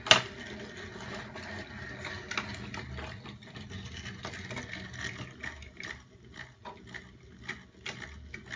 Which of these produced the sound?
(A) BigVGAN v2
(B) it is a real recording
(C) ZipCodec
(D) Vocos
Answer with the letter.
B